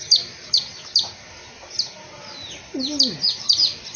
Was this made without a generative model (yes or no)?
yes